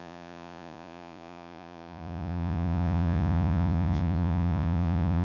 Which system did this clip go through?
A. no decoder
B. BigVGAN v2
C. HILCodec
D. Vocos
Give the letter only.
D